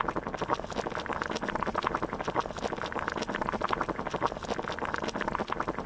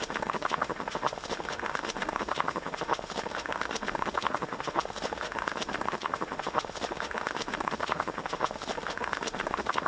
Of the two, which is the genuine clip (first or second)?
first